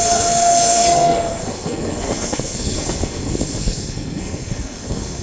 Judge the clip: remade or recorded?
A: remade